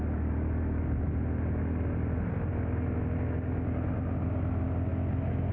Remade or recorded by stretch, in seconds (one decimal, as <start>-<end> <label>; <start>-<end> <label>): 0.0-5.5 recorded